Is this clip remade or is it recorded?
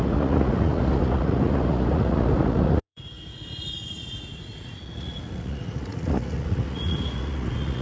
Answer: remade